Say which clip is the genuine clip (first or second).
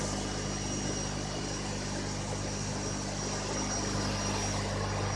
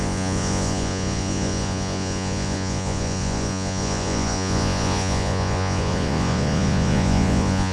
first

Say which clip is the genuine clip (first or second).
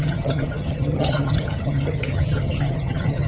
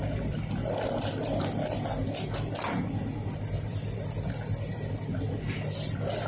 second